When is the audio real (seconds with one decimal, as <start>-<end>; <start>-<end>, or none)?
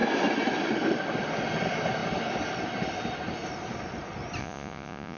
0.0-4.4